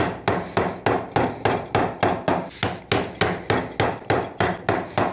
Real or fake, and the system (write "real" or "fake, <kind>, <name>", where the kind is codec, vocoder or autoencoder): real